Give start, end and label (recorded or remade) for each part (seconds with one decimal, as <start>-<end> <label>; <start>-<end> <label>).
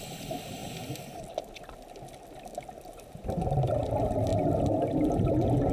0.0-5.7 recorded